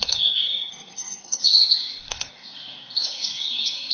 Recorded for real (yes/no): no